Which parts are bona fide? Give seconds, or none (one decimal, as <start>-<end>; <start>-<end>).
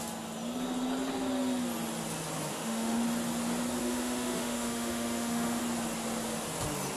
0.0-2.5; 3.0-3.8; 5.6-7.0